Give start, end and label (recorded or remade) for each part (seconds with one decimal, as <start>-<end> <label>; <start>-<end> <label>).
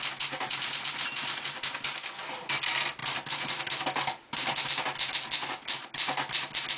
0.0-6.8 recorded